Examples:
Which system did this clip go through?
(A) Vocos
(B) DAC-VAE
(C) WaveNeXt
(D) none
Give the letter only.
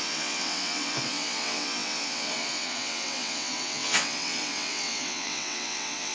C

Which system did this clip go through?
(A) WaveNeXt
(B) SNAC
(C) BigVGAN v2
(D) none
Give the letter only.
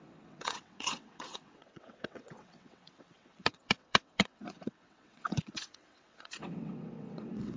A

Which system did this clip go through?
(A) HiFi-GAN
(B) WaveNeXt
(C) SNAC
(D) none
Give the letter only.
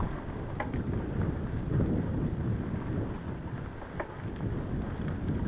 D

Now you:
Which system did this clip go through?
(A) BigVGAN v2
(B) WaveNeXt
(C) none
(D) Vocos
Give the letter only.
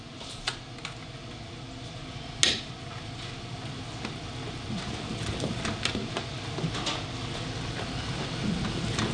C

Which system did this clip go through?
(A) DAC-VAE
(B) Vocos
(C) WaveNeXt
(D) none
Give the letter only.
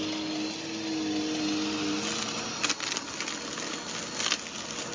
D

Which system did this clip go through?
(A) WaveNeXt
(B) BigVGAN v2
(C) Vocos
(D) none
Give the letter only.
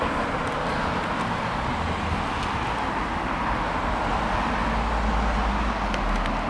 D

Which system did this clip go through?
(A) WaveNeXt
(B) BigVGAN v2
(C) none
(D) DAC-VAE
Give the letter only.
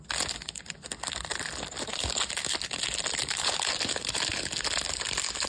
C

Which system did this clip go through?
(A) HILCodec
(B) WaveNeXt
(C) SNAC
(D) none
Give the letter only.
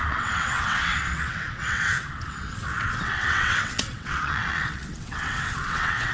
B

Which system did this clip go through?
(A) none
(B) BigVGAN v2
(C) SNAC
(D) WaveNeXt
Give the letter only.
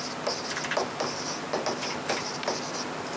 A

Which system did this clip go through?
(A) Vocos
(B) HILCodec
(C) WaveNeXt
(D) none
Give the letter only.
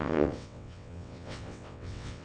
C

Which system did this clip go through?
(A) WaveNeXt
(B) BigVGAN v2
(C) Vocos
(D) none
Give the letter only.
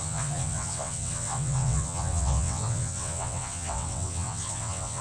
A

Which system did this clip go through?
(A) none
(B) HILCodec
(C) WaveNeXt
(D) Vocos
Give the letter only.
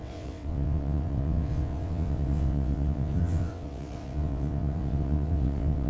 C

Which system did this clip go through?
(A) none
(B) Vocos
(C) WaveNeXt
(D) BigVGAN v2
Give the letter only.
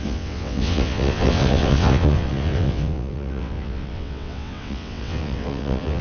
C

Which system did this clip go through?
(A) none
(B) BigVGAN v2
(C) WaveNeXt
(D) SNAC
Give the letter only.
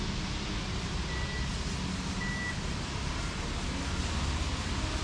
A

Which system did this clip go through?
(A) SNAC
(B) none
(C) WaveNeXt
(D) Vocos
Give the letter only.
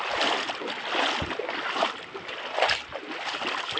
B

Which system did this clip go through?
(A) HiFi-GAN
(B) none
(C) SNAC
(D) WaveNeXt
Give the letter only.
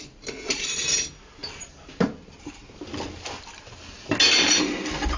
B